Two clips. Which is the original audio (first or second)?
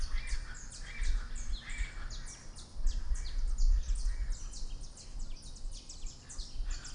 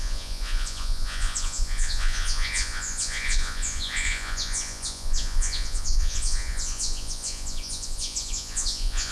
first